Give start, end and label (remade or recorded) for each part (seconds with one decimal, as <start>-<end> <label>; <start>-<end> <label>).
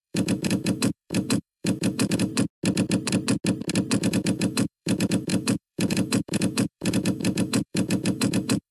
0.0-2.3 remade; 2.3-4.0 recorded; 4.0-8.7 remade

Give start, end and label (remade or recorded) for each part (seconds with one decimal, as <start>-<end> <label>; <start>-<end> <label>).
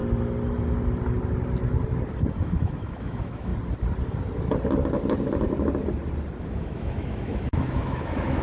0.0-2.3 recorded; 2.3-3.5 remade; 3.5-6.4 recorded; 6.4-8.4 remade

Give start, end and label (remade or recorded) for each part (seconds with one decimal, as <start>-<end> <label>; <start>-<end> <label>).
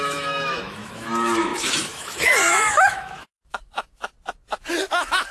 0.0-4.0 remade; 4.0-4.8 recorded; 4.8-5.3 remade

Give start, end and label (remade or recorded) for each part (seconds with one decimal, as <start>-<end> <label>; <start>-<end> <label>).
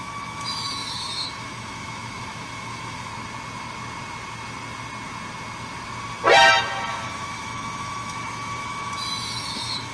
0.0-3.1 remade; 3.1-6.9 recorded; 6.9-9.9 remade